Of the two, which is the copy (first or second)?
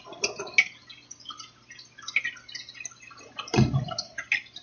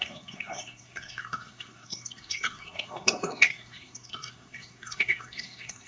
second